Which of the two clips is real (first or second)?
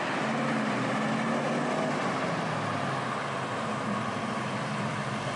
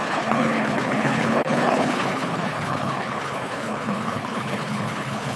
first